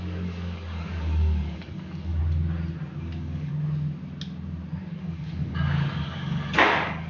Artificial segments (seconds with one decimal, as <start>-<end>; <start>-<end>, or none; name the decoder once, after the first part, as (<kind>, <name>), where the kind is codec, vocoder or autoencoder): 0.0-2.2 (codec, DAC); 3.0-3.5; 5.0-7.1